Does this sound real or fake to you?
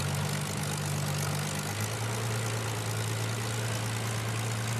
real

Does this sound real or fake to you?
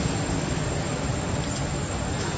real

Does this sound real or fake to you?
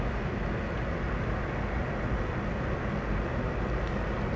real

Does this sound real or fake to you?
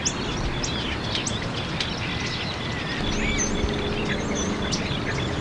real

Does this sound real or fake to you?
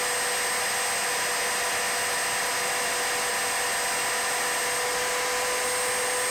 real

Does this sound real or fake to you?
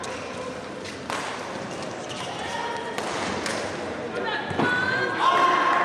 real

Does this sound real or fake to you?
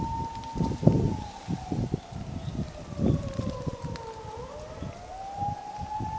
real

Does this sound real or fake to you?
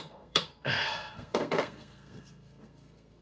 fake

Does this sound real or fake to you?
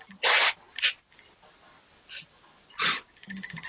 real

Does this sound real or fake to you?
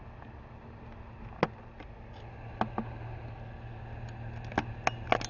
real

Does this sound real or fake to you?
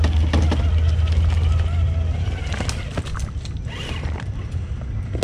real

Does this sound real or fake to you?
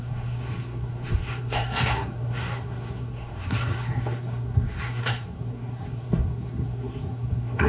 fake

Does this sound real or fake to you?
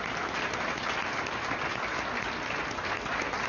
real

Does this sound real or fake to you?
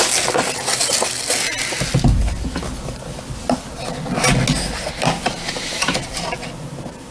real